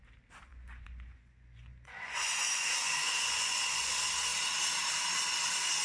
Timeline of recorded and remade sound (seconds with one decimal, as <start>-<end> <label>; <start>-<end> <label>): 0.0-0.5 recorded; 0.5-3.9 remade; 3.9-5.8 recorded